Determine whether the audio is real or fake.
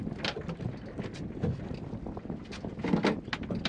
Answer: real